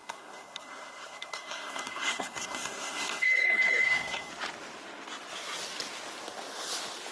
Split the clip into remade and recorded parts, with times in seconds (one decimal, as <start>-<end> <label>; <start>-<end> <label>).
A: 0.0-4.3 remade; 4.3-7.1 recorded